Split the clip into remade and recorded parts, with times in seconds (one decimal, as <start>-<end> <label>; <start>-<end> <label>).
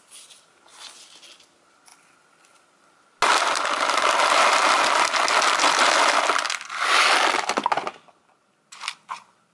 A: 0.0-9.5 recorded